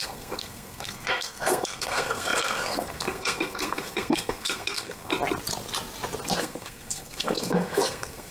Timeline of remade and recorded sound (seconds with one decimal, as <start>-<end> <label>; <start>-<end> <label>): 0.0-5.1 remade; 5.1-6.4 recorded; 6.4-8.3 remade